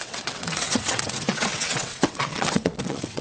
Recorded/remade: remade